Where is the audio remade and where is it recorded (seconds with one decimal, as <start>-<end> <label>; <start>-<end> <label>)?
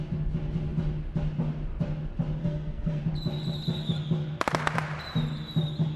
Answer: 0.0-2.4 recorded; 2.4-3.0 remade; 3.0-6.0 recorded